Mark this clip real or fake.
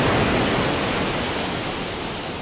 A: real